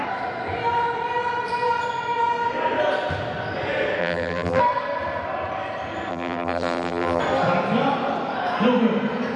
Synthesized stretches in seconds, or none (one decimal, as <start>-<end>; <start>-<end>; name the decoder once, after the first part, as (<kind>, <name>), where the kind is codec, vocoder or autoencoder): 4.0-4.6 (vocoder, BigVGAN v2); 6.1-7.2